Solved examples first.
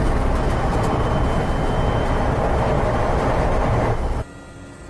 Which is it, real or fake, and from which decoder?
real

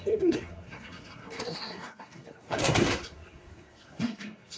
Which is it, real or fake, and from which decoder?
fake, codec, SNAC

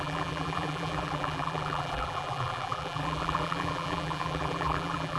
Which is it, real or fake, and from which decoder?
fake, vocoder, BigVGAN v2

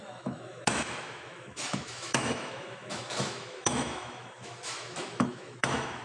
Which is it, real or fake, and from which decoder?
fake, autoencoder, DAC-VAE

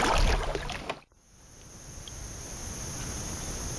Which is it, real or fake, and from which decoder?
real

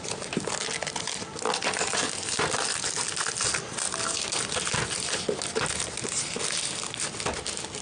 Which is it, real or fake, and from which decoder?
real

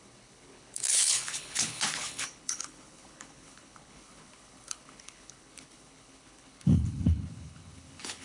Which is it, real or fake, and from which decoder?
fake, codec, HILCodec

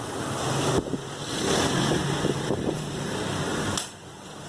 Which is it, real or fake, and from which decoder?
real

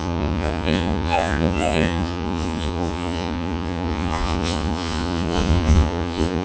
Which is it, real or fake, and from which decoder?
fake, vocoder, Vocos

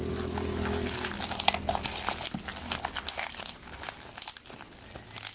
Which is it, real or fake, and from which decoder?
real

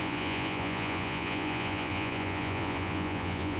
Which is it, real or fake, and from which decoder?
fake, vocoder, Vocos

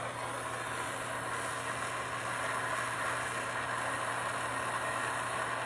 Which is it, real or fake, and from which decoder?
real